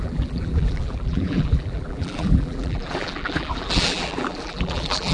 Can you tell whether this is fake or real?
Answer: fake